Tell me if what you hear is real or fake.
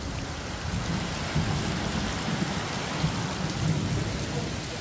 real